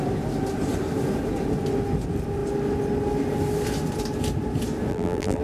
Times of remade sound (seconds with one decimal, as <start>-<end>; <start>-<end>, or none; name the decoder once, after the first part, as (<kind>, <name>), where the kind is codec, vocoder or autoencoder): 4.9-5.4 (vocoder, BigVGAN v2)